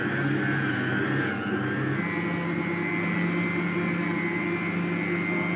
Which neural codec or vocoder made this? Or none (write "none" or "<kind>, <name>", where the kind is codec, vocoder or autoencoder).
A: none